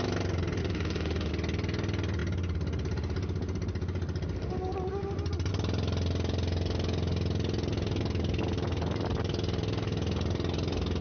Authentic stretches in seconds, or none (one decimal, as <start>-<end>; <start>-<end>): 0.0-0.6; 1.3-11.0

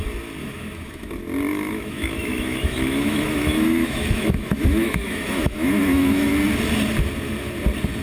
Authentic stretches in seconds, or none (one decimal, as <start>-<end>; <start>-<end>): 0.0-0.4; 1.1-1.5; 6.3-8.0

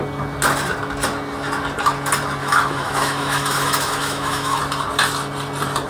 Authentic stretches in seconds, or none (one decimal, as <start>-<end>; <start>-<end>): 0.0-2.4; 4.6-5.9

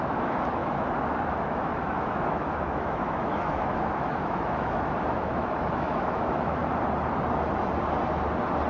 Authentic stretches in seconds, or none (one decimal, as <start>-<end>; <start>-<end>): 6.6-8.7

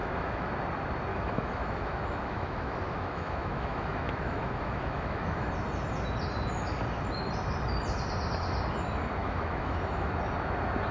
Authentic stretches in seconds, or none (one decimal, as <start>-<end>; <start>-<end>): 0.5-1.1; 5.5-9.2; 10.1-10.9

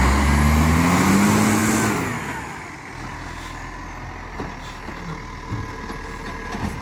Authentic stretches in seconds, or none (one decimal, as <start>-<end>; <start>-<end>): 0.0-6.8

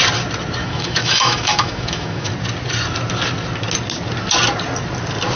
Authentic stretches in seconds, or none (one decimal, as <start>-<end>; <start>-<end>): 0.0-0.6; 2.3-5.4